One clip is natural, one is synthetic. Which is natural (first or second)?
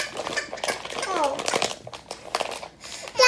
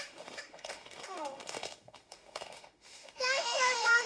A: first